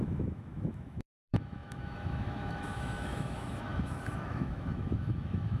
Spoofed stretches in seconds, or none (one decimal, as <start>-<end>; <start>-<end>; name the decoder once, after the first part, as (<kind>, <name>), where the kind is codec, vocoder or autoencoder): 0.0-5.6 (autoencoder, DAC-VAE)